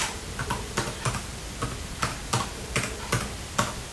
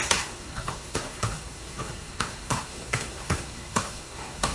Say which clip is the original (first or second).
first